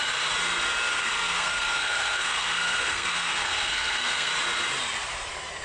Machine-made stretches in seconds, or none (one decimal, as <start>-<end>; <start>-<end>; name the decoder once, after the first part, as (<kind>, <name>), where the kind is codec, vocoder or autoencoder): 0.9-4.3 (codec, SNAC)